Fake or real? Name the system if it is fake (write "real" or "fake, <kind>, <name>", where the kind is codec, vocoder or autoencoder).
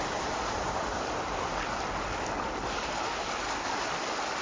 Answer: real